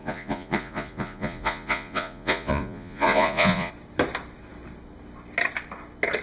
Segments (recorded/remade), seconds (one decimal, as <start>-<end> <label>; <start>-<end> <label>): 0.0-3.7 remade; 3.7-6.2 recorded